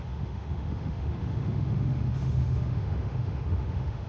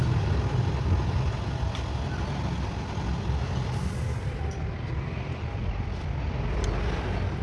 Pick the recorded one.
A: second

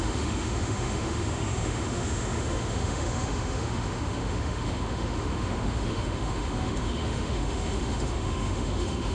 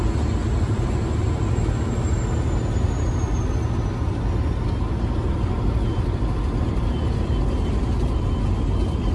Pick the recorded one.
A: second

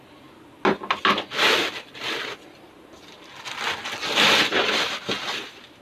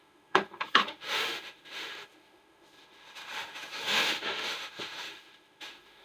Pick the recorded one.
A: first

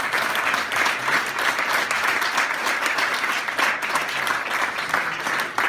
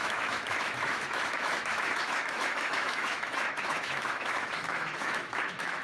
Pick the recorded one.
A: first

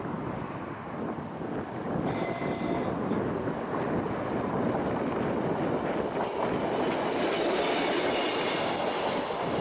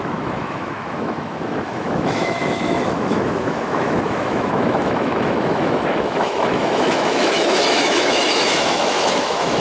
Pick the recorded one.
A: first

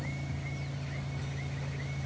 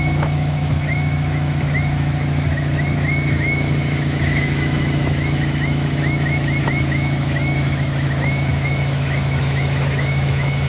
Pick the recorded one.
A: first